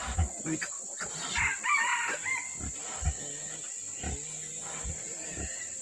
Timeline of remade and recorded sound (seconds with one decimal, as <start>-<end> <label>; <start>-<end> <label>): 0.0-5.8 recorded